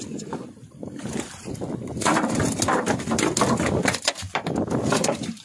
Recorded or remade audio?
remade